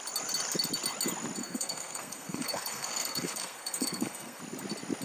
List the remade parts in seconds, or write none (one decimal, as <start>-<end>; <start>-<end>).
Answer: 1.4-4.4